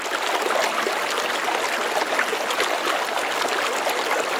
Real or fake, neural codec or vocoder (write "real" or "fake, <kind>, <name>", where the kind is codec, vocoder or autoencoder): real